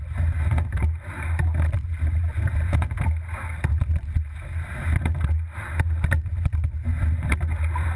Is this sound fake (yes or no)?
no